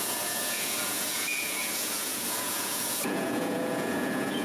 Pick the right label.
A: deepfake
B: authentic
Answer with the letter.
A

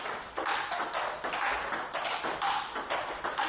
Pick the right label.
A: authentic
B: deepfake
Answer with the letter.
A